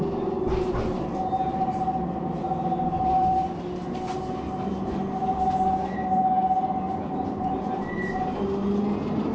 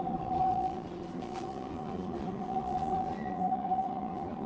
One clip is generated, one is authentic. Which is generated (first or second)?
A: second